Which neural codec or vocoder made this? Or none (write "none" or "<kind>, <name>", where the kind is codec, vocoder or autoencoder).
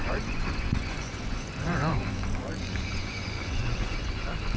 vocoder, Vocos